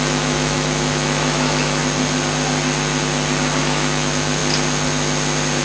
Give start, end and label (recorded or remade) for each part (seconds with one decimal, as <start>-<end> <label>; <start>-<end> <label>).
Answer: 0.0-1.8 remade; 1.8-3.6 recorded; 3.6-4.4 remade; 4.4-5.6 recorded